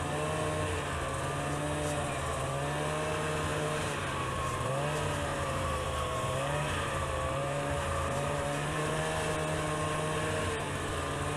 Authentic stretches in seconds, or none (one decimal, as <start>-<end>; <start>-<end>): 0.0-3.5; 4.7-5.3; 9.0-11.4

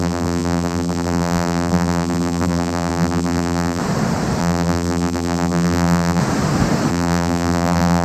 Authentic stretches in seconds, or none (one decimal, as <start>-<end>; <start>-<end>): 3.8-4.4; 6.2-6.9

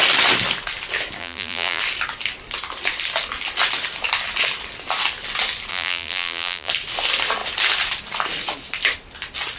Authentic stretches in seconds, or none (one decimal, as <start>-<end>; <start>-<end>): 0.0-1.2; 1.8-5.7; 6.7-9.6

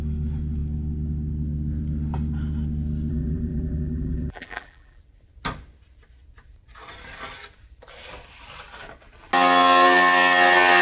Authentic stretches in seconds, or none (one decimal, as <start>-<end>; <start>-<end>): 0.0-3.1; 5.0-10.8

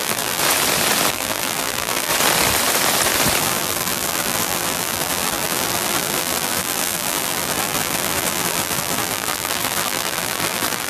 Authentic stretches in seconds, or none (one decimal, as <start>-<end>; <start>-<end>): 0.4-1.1; 2.1-3.4